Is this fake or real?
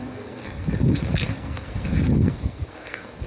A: fake